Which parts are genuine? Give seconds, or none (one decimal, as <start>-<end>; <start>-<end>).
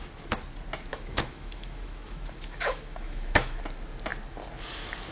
0.0-0.9; 3.6-5.1